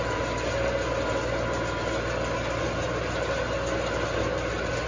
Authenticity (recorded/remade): recorded